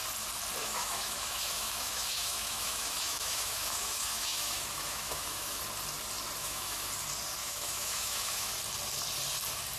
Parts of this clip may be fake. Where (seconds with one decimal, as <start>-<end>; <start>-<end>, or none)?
0.6-5.6; 6.4-6.9; 7.4-8.5